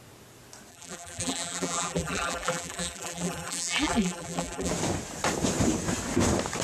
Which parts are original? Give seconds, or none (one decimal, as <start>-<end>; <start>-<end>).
0.0-0.7; 4.7-6.6